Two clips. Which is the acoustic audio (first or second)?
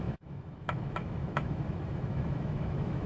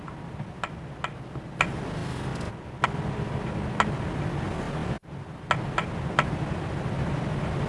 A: second